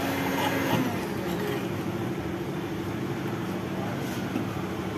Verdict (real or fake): real